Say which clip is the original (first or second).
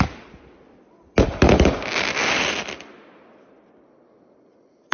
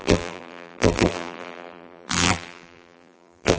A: first